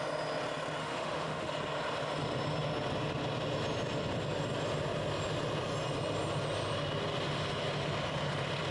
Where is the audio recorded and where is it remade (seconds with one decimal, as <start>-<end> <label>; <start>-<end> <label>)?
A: 0.0-0.8 recorded; 0.8-1.5 remade; 1.5-8.7 recorded